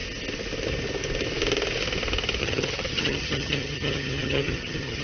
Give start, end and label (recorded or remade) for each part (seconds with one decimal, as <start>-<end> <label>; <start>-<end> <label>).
0.0-2.4 recorded; 2.4-5.0 remade